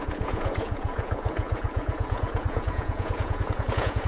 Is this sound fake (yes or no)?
yes